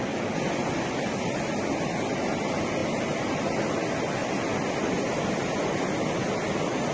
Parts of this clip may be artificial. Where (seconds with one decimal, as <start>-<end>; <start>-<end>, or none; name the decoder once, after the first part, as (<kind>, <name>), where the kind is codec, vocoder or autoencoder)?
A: none